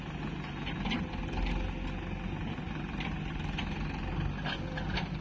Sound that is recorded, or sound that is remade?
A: recorded